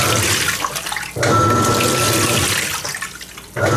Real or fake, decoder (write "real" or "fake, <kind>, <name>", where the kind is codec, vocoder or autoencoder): real